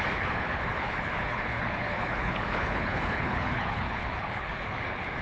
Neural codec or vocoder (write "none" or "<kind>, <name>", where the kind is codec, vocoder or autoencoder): codec, HILCodec